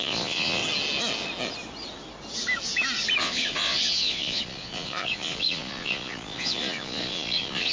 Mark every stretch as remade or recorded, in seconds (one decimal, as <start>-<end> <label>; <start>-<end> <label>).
0.0-0.6 remade; 0.6-3.2 recorded; 3.2-7.7 remade